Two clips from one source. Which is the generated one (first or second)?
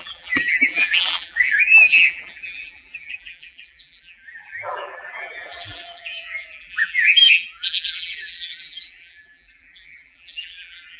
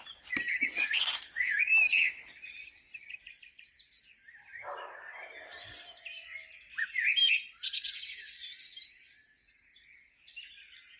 first